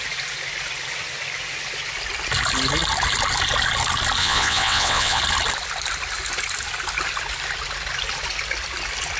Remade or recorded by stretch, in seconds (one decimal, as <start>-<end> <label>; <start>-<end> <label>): 0.0-4.2 recorded; 4.2-5.2 remade; 5.2-9.2 recorded